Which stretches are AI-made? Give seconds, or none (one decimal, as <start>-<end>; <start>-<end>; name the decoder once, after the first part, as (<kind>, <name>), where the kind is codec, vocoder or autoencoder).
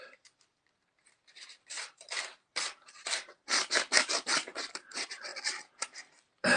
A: 0.0-5.3 (vocoder, BigVGAN v2); 6.1-6.6